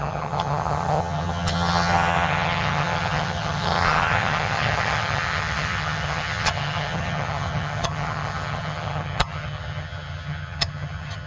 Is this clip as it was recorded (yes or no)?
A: no